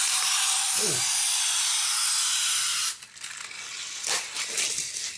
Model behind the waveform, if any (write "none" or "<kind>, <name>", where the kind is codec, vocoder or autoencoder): none